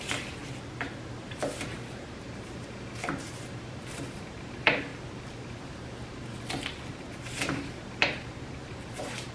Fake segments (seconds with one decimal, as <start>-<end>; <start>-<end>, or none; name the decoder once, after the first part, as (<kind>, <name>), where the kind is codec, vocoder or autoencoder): 0.0-0.4 (vocoder, BigVGAN v2); 1.3-4.9; 6.9-9.3